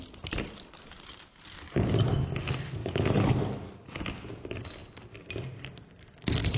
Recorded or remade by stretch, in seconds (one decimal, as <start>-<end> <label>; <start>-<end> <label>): 0.0-2.8 recorded; 2.8-3.7 remade; 3.7-6.6 recorded